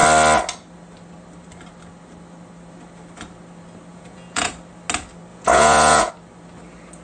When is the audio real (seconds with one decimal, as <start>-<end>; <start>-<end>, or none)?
0.0-3.9; 4.5-5.3; 6.1-7.0